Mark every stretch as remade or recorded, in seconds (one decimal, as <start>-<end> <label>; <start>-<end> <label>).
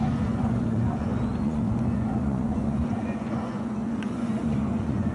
0.0-5.1 remade